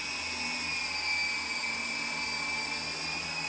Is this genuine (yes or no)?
yes